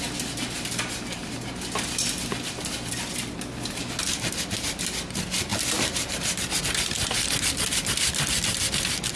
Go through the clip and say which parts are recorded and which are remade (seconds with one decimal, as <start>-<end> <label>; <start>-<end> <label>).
0.0-1.2 recorded; 1.2-3.3 remade; 3.3-5.5 recorded; 5.5-6.6 remade; 6.6-9.2 recorded